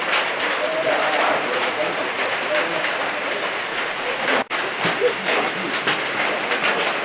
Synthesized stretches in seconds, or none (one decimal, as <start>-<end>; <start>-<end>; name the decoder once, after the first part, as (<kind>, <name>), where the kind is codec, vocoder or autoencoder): 3.7-4.6 (vocoder, Vocos)